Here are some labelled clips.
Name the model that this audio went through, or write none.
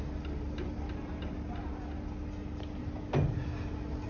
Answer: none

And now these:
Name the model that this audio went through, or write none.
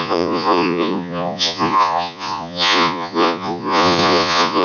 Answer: vocoder, Vocos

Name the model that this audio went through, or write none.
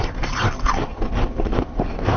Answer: none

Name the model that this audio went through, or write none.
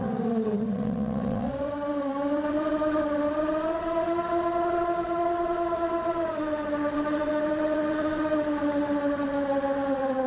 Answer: vocoder, WaveNeXt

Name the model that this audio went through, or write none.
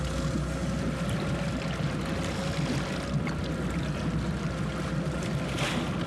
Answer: none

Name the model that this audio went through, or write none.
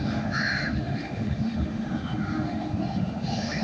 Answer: autoencoder, DAC-VAE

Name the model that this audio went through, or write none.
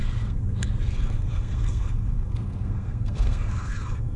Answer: codec, SNAC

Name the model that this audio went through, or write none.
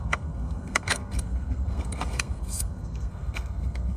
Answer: codec, SNAC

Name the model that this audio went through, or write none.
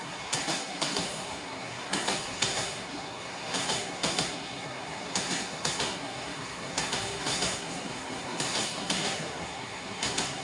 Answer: codec, SNAC